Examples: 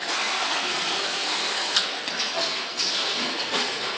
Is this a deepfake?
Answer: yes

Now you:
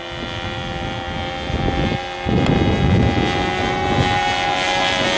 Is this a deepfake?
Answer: no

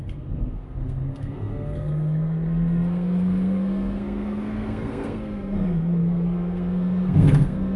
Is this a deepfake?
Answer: yes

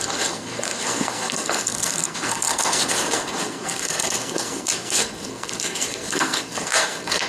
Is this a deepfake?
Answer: yes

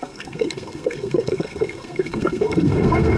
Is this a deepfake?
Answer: yes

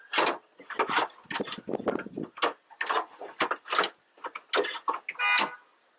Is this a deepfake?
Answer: no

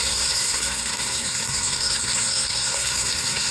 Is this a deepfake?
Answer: yes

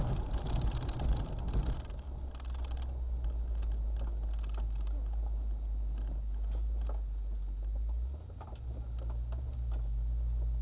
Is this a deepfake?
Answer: no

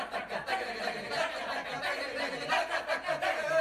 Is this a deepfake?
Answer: no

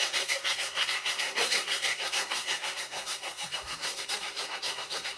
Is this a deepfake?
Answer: yes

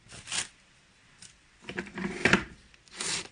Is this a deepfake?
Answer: no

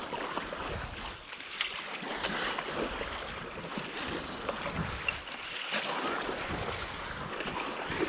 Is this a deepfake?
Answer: no